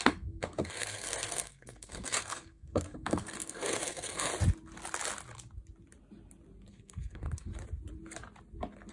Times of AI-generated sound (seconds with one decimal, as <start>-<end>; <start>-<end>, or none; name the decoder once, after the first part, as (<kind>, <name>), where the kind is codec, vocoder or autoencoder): 0.0-4.3 (codec, SNAC); 6.7-7.5